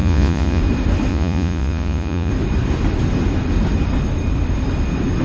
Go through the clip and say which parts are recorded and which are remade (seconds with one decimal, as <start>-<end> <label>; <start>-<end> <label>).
0.0-0.6 remade; 0.6-1.1 recorded; 1.1-2.3 remade; 2.3-5.2 recorded